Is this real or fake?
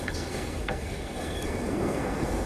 fake